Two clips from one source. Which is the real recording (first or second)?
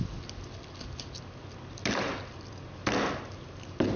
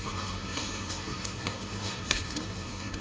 first